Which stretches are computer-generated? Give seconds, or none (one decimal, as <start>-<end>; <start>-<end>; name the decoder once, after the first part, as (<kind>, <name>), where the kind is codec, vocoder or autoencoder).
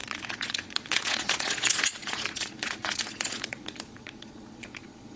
0.0-5.2 (vocoder, Vocos)